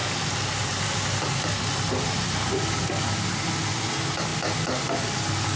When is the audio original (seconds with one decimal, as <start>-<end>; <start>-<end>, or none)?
0.0-5.6